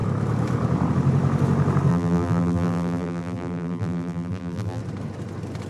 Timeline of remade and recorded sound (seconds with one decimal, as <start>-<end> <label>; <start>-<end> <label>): 0.0-1.9 recorded; 1.9-4.8 remade; 4.8-5.7 recorded